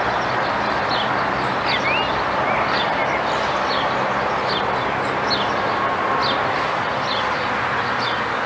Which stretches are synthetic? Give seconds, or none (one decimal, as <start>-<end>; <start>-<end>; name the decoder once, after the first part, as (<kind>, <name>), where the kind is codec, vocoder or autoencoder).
none